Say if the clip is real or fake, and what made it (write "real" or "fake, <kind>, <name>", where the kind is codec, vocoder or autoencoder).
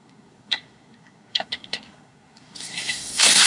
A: fake, codec, SNAC